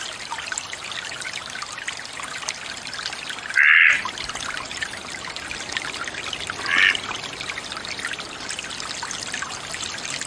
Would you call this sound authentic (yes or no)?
yes